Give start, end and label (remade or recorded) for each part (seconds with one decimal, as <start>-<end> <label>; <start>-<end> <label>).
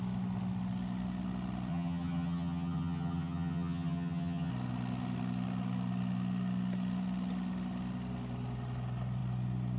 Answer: 0.0-1.7 recorded; 1.7-4.5 remade; 4.5-9.8 recorded